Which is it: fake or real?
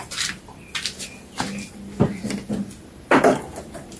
real